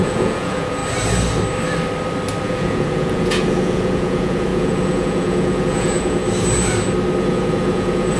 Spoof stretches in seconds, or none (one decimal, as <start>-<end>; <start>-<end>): 0.0-0.8; 2.4-6.2; 7.2-8.2